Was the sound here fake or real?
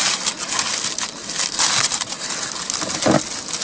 real